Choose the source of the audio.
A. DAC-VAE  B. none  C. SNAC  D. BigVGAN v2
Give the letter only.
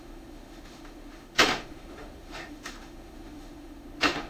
A